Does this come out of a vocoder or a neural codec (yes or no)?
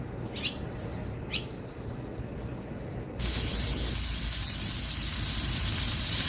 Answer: no